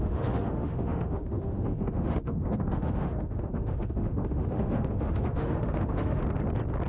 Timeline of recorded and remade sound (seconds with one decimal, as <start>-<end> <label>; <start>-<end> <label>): 0.0-6.2 remade; 6.2-6.9 recorded